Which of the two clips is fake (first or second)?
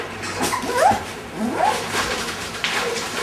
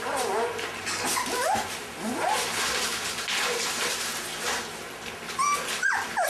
first